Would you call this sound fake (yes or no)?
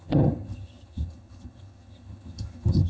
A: yes